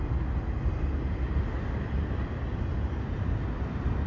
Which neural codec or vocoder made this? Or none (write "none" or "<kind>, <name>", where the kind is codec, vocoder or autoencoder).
none